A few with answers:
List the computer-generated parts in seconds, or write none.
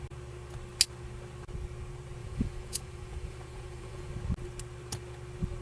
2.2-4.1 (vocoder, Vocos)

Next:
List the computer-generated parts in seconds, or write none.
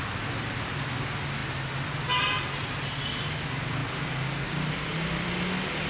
none